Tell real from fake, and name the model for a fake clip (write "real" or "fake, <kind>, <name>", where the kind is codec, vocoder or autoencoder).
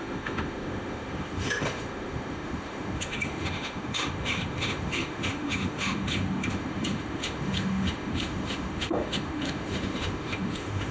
fake, autoencoder, DAC-VAE